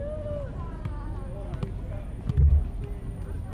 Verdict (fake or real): real